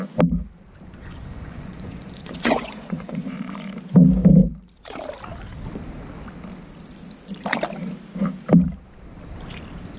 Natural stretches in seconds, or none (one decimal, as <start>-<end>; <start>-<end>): 0.0-1.0; 3.7-10.0